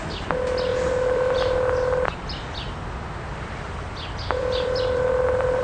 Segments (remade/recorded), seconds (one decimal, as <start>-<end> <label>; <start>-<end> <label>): 0.0-0.7 recorded; 0.7-1.6 remade; 1.6-4.4 recorded; 4.4-5.6 remade

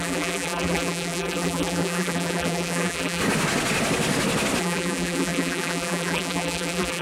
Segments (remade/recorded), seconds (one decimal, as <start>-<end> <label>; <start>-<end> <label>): 0.0-3.2 remade; 3.2-4.6 recorded; 4.6-7.0 remade

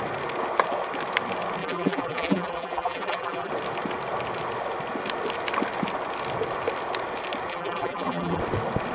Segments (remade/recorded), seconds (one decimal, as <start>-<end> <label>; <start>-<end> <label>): 0.0-1.6 recorded; 1.6-3.5 remade; 3.5-7.5 recorded; 7.5-8.4 remade; 8.4-8.9 recorded